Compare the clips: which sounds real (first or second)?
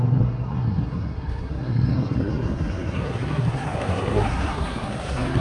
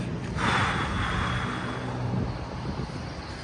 second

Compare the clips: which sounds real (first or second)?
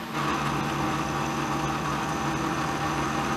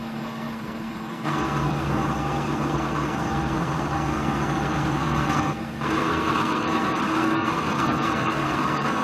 first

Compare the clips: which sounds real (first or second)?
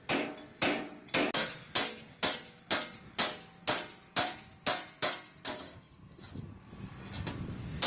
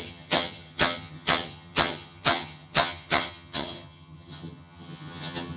first